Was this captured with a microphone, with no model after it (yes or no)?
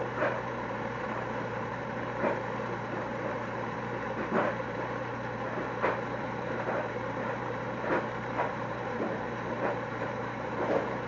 no